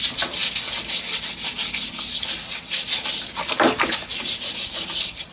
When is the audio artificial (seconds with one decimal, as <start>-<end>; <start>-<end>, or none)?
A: none